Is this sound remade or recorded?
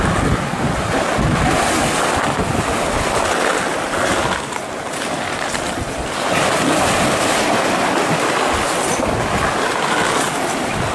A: recorded